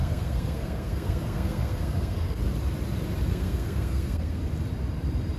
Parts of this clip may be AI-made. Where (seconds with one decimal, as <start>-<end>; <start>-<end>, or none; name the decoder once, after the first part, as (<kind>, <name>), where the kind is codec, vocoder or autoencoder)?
0.0-2.4 (codec, SNAC); 3.3-4.4